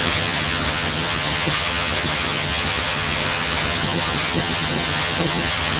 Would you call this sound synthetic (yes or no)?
yes